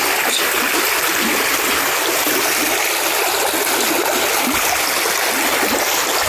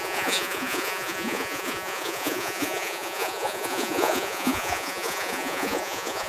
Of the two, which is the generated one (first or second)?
second